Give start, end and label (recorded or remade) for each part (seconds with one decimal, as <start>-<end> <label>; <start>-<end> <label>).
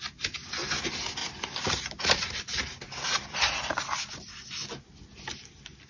0.0-5.9 recorded